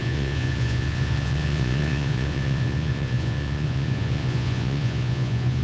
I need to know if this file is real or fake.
fake